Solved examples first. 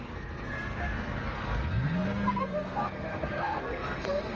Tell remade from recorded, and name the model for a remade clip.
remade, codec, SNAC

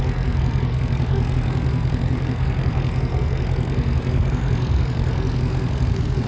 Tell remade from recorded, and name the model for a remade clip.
remade, codec, SNAC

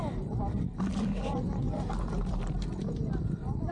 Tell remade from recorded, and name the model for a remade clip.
recorded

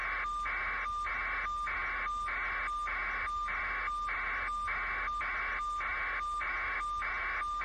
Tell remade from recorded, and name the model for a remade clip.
recorded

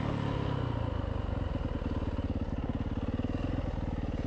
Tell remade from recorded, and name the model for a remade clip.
recorded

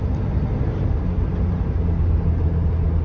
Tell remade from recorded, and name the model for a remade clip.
recorded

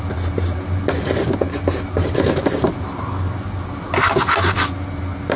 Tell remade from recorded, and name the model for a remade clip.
recorded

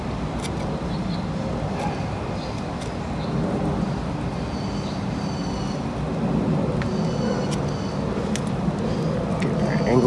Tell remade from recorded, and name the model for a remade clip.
recorded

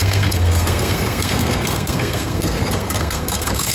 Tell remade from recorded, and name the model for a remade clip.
remade, codec, SNAC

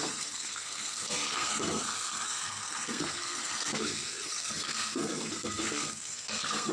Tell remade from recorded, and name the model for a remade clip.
remade, codec, SNAC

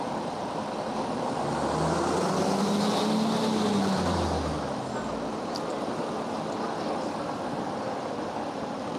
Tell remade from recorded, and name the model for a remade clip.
recorded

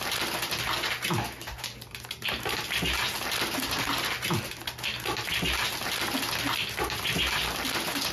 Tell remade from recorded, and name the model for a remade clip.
recorded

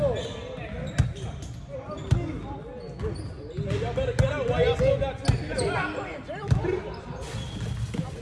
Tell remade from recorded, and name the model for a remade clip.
recorded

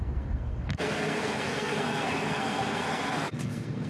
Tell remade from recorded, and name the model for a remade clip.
remade, codec, SNAC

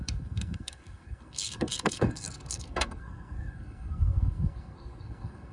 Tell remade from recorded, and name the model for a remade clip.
remade, codec, SNAC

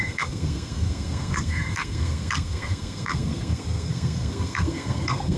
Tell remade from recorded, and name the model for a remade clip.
remade, codec, SNAC